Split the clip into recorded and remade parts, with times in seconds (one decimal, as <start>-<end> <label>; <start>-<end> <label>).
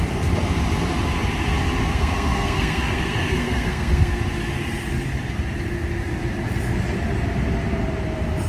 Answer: 0.0-1.8 recorded; 1.8-4.2 remade; 4.2-8.5 recorded